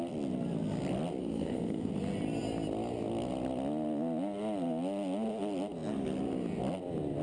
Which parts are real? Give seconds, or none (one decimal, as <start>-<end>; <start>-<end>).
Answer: 0.0-1.2; 1.9-7.2